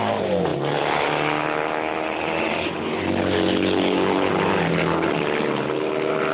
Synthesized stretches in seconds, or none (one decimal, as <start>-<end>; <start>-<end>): none